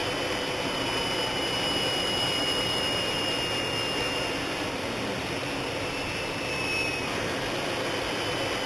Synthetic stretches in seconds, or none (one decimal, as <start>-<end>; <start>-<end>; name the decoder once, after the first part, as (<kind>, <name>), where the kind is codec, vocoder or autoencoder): 0.0-8.7 (vocoder, BigVGAN v2)